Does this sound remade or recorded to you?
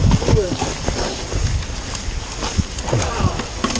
recorded